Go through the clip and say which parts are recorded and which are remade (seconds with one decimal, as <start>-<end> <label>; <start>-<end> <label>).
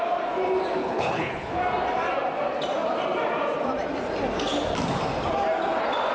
0.0-0.8 recorded; 0.8-1.6 remade; 1.6-6.1 recorded